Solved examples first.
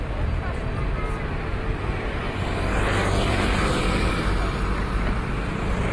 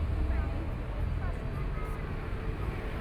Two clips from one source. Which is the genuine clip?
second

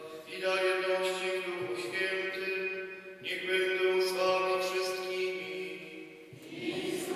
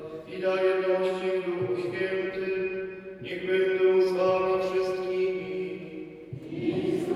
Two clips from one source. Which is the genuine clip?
first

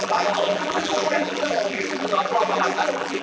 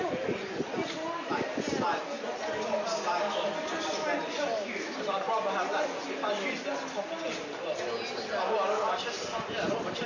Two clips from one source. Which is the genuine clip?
second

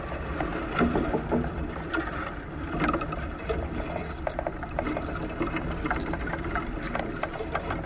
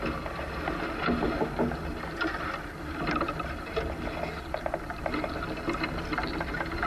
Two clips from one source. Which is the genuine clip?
second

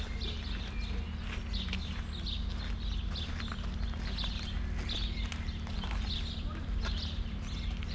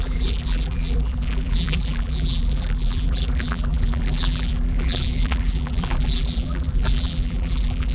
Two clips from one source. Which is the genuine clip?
first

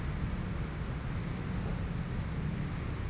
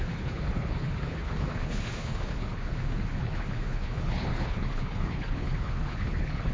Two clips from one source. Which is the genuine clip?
first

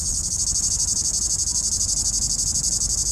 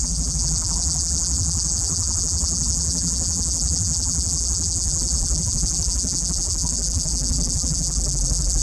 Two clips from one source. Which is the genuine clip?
first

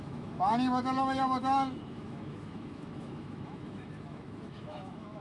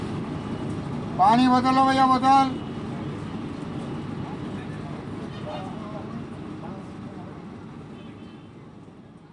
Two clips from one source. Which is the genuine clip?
second